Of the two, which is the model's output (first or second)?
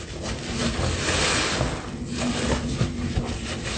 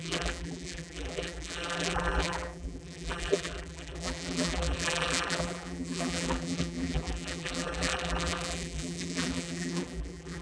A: second